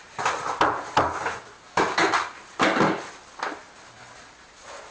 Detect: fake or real real